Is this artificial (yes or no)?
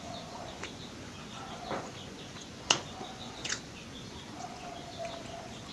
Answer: yes